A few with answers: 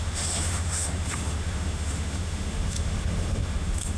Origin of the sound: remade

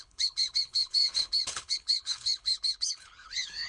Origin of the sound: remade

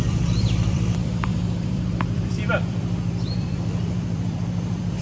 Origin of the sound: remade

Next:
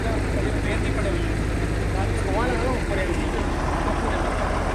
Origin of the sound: recorded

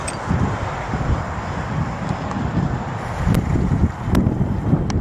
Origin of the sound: recorded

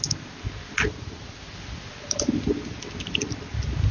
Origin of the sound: recorded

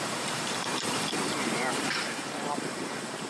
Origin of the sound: remade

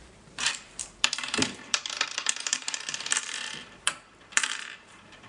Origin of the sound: remade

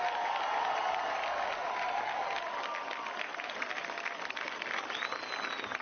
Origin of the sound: recorded